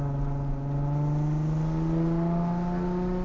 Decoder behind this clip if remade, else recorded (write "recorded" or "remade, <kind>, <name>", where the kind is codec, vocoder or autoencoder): recorded